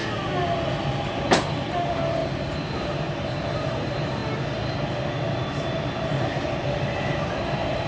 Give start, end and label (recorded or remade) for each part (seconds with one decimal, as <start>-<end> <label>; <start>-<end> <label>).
0.0-1.3 recorded; 1.3-4.2 remade; 4.2-7.2 recorded; 7.2-7.9 remade